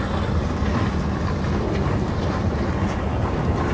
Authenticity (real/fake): real